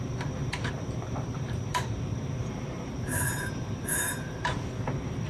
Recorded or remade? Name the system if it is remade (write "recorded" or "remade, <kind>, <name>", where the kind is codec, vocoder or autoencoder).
remade, vocoder, BigVGAN v2